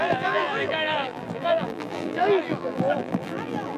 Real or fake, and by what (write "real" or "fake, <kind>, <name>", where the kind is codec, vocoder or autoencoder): fake, vocoder, BigVGAN v2